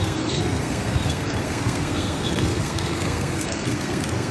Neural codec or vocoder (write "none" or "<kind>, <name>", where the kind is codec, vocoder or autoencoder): codec, SNAC